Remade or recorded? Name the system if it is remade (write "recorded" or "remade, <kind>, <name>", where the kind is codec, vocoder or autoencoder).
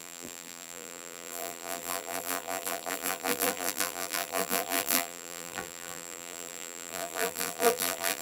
remade, vocoder, BigVGAN v2